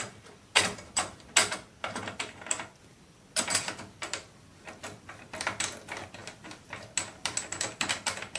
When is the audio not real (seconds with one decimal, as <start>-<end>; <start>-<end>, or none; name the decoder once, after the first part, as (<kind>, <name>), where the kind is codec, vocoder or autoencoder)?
none